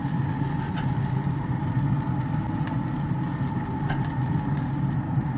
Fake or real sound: real